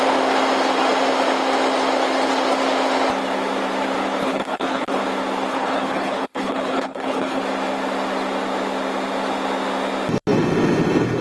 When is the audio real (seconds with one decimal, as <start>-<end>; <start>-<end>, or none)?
0.0-4.2; 5.0-5.5; 7.4-11.2